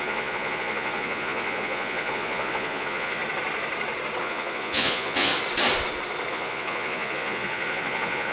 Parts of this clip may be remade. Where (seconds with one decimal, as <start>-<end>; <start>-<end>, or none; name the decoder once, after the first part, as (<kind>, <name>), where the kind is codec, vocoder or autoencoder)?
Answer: 0.0-3.2 (vocoder, Vocos); 4.2-5.3; 6.3-8.3

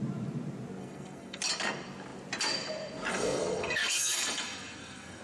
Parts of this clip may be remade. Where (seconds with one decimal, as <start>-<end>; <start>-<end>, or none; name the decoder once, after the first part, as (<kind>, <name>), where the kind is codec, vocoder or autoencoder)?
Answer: 0.8-1.4 (codec, SNAC); 3.1-5.2

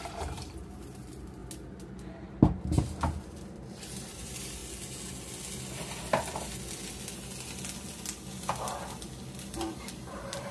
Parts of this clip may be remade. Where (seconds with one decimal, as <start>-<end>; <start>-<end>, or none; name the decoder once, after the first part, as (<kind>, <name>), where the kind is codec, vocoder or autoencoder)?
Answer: 0.0-1.4 (vocoder, BigVGAN v2); 2.5-4.6; 9.9-10.5

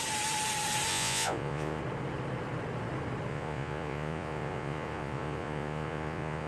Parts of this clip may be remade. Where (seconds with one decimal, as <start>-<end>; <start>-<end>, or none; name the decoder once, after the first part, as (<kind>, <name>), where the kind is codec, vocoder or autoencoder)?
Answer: 0.9-1.8 (vocoder, Vocos); 3.3-6.5

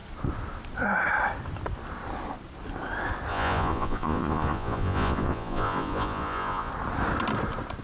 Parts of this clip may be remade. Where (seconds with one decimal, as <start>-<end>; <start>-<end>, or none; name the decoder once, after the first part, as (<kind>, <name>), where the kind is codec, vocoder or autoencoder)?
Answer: 3.3-6.7 (vocoder, Vocos)

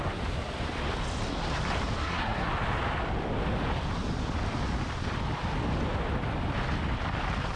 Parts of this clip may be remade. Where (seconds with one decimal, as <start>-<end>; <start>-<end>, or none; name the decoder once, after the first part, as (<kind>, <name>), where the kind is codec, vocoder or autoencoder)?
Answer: 2.0-2.5 (codec, SNAC)

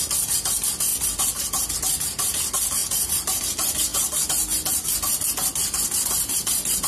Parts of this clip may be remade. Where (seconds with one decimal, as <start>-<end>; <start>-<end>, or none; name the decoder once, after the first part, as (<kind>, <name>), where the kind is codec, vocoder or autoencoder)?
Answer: 2.8-3.4 (vocoder, BigVGAN v2)